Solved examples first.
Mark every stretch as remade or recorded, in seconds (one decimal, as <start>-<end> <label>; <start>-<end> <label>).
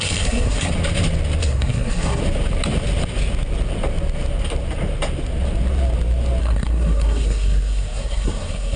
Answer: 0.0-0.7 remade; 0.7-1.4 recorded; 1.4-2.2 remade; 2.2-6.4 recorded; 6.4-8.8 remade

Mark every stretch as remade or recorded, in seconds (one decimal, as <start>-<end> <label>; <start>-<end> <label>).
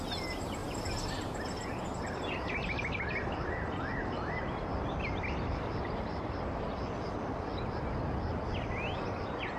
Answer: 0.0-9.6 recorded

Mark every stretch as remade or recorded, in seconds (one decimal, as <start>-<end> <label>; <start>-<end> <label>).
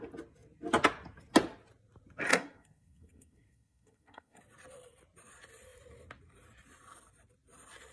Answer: 0.0-2.3 recorded; 2.3-4.4 remade; 4.4-7.9 recorded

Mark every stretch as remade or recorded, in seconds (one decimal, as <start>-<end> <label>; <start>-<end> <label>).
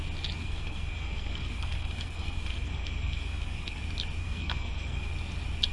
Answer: 0.0-0.4 recorded; 0.4-3.8 remade; 3.8-4.2 recorded; 4.2-5.1 remade; 5.1-5.7 recorded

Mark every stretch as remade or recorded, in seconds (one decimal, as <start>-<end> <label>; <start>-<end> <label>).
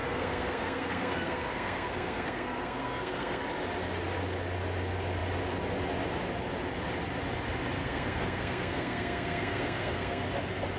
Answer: 0.0-3.4 remade; 3.4-7.8 recorded; 7.8-10.2 remade; 10.2-10.8 recorded